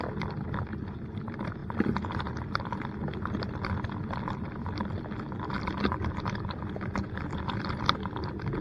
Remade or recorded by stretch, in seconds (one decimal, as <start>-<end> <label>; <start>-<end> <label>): 0.0-8.6 recorded